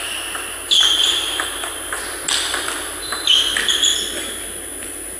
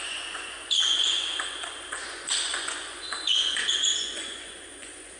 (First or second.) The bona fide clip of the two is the first